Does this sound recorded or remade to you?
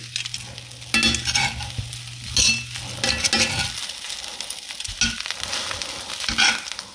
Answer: recorded